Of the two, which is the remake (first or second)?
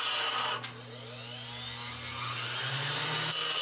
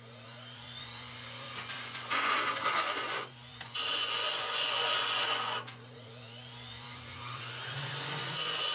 second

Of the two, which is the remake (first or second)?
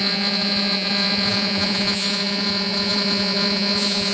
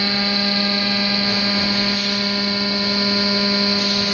first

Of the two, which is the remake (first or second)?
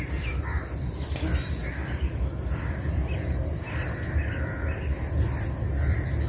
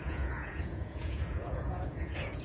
second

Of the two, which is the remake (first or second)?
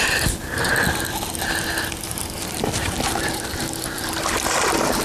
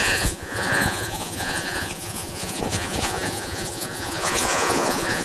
second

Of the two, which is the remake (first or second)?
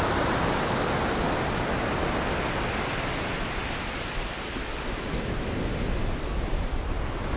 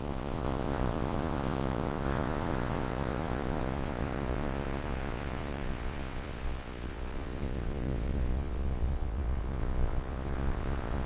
second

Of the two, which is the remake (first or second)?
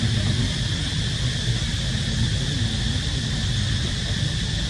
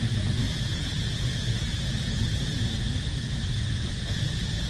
second